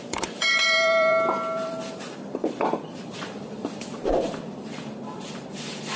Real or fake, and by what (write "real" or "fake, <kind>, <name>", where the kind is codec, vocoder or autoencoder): fake, vocoder, BigVGAN v2